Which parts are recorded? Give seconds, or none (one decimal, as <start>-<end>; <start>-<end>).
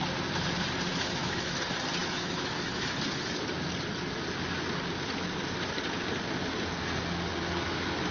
0.0-0.9; 1.5-2.0; 3.0-8.1